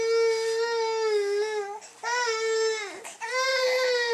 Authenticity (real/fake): real